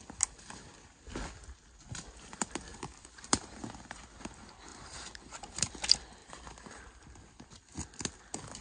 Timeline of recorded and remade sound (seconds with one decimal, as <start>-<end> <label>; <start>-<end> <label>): 0.0-2.7 recorded; 2.7-3.6 remade; 3.6-4.7 recorded; 4.7-5.7 remade; 5.7-6.2 recorded; 6.2-7.0 remade; 7.0-8.6 recorded